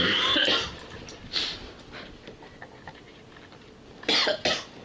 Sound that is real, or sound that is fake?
real